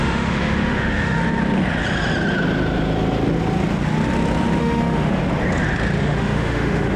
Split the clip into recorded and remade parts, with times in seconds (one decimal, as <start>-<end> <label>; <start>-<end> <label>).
0.0-1.2 remade; 1.2-4.6 recorded; 4.6-5.2 remade; 5.2-6.0 recorded; 6.0-7.0 remade